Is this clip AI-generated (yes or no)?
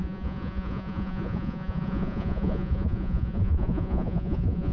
yes